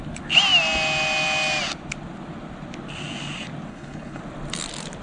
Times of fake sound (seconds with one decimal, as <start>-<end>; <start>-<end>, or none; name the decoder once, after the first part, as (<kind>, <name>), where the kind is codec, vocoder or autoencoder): 3.7-4.2 (codec, HILCodec)